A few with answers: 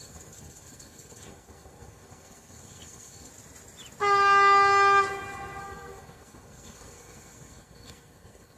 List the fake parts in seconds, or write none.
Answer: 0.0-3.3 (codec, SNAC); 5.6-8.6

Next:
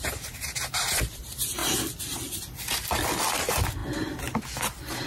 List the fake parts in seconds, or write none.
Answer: 0.0-1.6 (vocoder, BigVGAN v2); 3.3-3.8

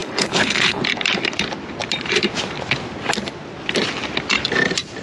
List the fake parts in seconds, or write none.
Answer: 0.0-0.8 (codec, HILCodec)

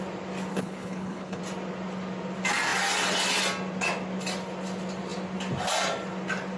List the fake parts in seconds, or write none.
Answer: 0.5-1.4 (codec, HILCodec)